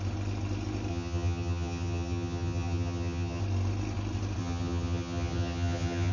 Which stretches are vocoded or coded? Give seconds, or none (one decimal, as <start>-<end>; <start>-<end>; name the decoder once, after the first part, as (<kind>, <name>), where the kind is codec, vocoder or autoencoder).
0.9-3.4 (vocoder, HiFi-GAN); 4.4-6.1